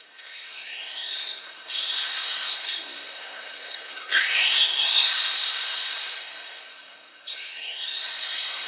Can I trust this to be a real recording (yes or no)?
no